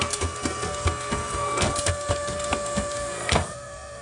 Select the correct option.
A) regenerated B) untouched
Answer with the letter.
A